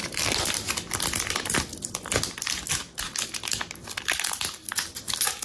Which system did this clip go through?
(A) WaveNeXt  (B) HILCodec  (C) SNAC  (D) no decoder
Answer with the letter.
D